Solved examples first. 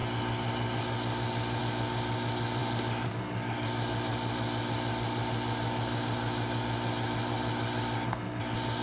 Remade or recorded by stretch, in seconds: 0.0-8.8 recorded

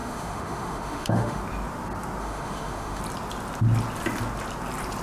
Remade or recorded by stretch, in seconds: 0.0-1.4 remade; 1.4-2.2 recorded; 2.2-3.0 remade; 3.0-5.0 recorded

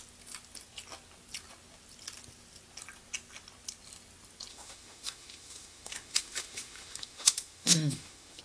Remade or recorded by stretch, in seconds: 0.0-4.5 recorded; 4.5-8.4 remade

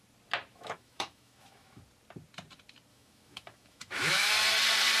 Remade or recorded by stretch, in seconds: 0.0-0.5 recorded; 0.5-1.8 remade; 1.8-2.9 recorded; 2.9-4.3 remade; 4.3-5.0 recorded

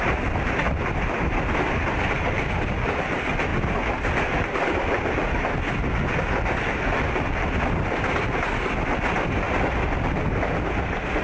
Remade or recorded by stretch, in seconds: 0.0-11.2 recorded